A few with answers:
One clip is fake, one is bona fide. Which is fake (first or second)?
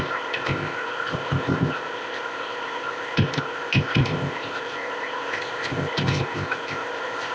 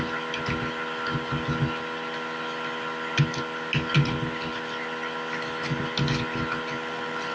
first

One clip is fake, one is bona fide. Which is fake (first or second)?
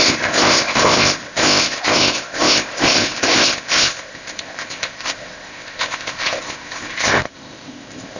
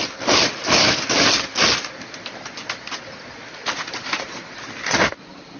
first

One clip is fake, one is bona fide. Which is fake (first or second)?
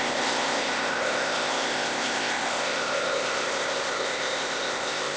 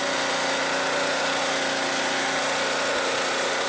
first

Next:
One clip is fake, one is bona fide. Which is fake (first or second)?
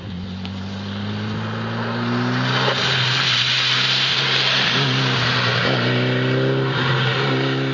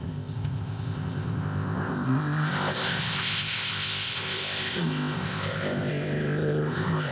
second